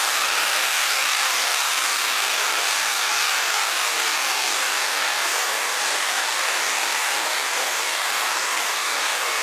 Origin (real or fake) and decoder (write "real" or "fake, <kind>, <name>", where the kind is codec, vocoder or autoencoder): fake, codec, DAC